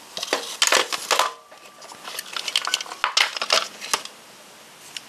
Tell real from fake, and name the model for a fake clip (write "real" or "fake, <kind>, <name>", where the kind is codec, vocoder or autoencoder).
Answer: real